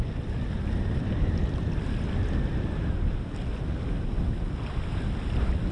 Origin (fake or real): real